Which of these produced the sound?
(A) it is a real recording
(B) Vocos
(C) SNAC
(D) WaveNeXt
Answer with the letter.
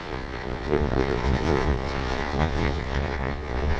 B